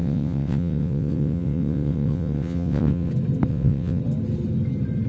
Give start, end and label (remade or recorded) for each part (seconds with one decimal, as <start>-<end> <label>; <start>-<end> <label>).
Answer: 0.0-3.1 remade; 3.1-3.5 recorded; 3.5-4.0 remade; 4.0-5.1 recorded